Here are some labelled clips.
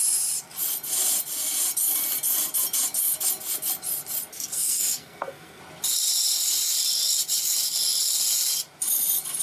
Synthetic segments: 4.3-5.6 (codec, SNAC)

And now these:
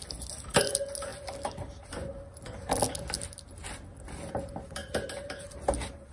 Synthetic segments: none

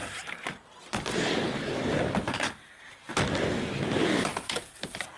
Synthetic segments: none

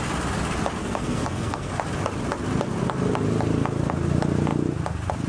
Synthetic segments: 0.8-1.7 (codec, SNAC)

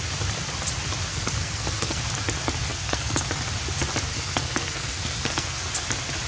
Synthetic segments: 1.1-2.0 (codec, SNAC); 2.7-3.2; 4.1-5.6

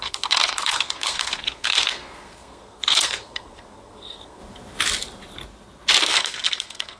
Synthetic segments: 0.0-4.4 (codec, SNAC); 6.0-7.0

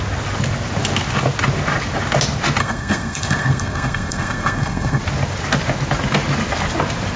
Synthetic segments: 2.6-5.0 (codec, SNAC)